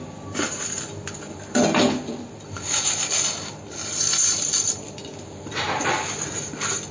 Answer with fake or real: real